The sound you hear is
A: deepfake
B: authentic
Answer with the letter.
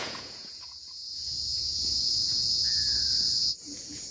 A